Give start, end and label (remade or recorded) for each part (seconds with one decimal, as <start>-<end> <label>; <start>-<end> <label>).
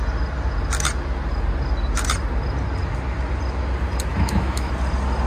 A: 0.0-4.1 recorded; 4.1-4.7 remade; 4.7-5.3 recorded